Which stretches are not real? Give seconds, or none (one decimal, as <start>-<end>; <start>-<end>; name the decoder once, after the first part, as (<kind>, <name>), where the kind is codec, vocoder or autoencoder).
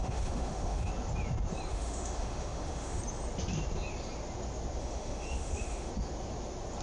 0.0-0.9 (autoencoder, DAC-VAE); 1.7-3.0; 4.8-5.9